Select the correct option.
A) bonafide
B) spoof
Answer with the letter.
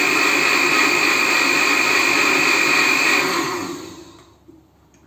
A